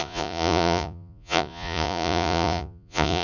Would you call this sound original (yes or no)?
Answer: no